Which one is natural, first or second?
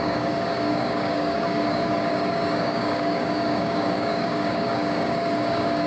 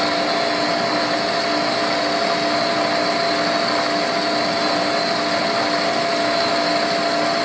second